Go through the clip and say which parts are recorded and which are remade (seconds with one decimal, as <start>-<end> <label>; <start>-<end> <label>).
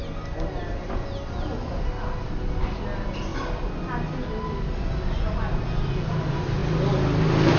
0.0-7.6 recorded